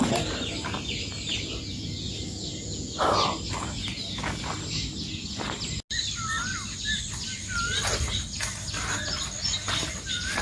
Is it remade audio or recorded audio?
recorded